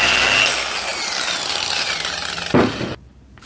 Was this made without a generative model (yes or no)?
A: yes